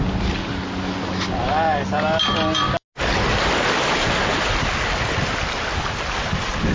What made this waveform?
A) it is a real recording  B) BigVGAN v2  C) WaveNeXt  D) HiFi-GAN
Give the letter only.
A